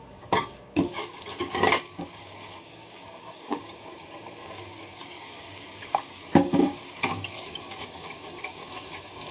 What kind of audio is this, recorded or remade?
remade